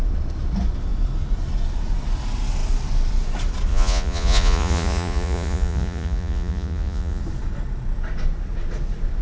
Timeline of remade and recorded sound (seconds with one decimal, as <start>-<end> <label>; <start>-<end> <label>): 0.0-3.7 recorded; 3.7-7.2 remade; 7.2-9.2 recorded